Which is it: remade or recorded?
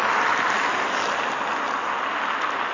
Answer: recorded